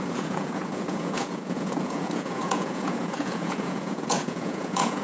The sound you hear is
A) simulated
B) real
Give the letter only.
A